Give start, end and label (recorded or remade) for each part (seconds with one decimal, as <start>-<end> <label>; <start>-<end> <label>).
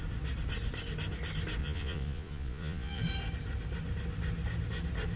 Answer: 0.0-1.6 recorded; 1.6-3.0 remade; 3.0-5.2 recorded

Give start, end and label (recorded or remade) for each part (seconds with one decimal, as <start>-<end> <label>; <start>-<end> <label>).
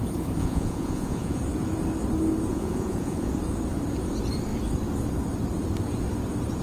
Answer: 0.0-0.4 recorded; 0.4-1.4 remade; 1.4-2.5 recorded; 2.5-3.3 remade; 3.3-6.6 recorded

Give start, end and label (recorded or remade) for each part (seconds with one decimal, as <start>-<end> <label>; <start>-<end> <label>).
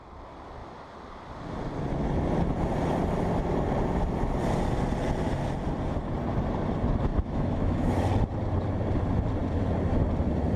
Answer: 0.0-7.1 recorded; 7.1-8.0 remade; 8.0-10.6 recorded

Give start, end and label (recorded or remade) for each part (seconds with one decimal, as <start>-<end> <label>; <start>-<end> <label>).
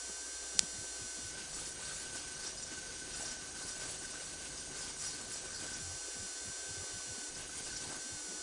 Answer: 0.0-1.3 recorded; 1.3-5.8 remade; 5.8-7.3 recorded; 7.3-8.0 remade; 8.0-8.4 recorded